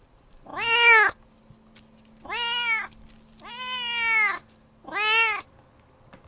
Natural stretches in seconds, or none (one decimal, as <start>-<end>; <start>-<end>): 0.0-6.3